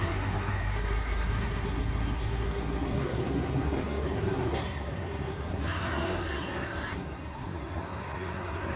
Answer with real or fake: fake